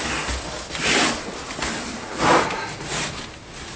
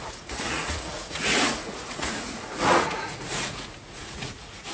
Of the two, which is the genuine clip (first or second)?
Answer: first